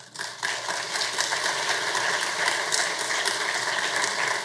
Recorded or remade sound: recorded